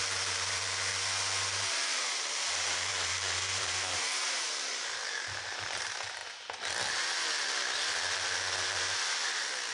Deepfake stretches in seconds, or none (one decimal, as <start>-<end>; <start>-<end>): 0.0-0.9; 1.4-6.2